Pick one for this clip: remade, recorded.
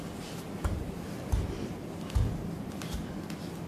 remade